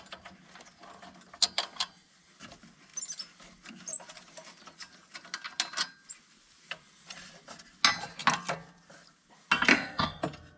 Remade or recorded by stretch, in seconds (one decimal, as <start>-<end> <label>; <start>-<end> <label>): 0.0-9.7 recorded; 9.7-10.2 remade; 10.2-10.6 recorded